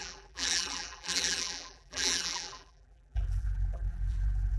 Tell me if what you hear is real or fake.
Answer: fake